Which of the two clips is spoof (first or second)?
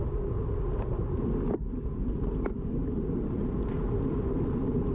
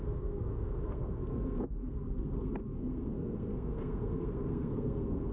second